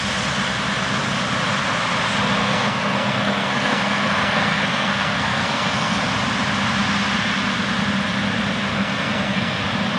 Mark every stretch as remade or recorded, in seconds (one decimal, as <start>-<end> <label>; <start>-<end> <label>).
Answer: 0.0-2.4 recorded; 2.4-6.0 remade; 6.0-8.7 recorded; 8.7-9.6 remade; 9.6-10.0 recorded